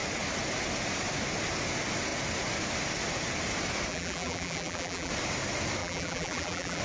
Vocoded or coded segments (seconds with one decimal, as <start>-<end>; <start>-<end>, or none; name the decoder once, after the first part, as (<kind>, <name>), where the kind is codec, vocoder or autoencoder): 3.9-5.1 (vocoder, BigVGAN v2); 5.8-6.8